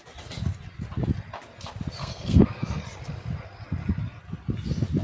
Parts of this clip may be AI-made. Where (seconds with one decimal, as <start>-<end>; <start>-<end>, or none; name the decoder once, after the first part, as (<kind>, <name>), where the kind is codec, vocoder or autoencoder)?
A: 2.0-2.8 (codec, SNAC)